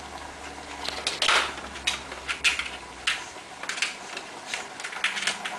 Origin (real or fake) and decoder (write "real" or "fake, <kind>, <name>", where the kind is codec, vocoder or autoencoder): real